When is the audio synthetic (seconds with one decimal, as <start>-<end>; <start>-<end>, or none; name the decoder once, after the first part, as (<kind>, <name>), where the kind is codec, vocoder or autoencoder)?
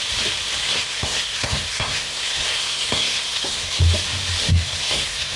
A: 0.6-3.8 (codec, SNAC); 4.5-5.4